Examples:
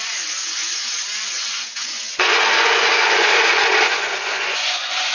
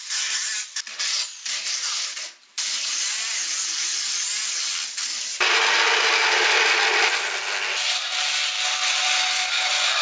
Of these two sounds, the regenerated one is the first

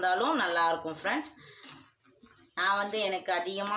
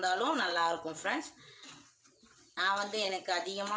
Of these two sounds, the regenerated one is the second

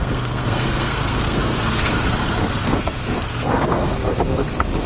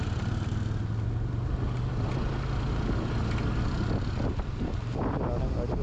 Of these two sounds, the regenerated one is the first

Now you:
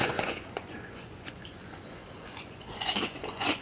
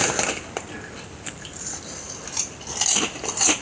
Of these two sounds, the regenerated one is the first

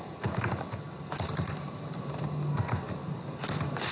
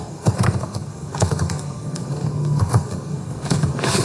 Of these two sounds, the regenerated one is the second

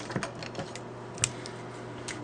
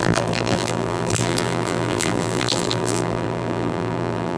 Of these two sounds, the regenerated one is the second